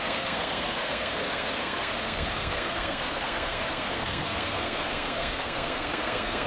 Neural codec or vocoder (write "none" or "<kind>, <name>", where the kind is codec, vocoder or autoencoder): codec, SNAC